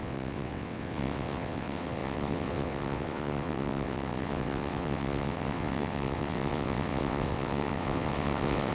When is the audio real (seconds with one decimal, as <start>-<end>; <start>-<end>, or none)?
none